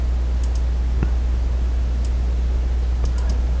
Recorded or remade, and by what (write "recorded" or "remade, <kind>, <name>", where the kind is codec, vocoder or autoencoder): recorded